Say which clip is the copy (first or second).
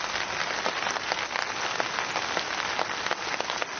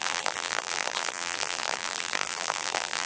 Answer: second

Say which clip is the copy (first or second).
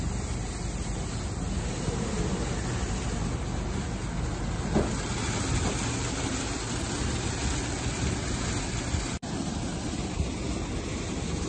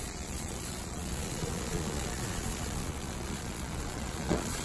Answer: second